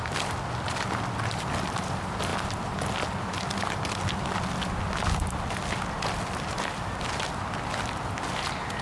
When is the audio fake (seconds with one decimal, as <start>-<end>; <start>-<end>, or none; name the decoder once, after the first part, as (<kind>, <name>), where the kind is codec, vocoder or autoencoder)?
none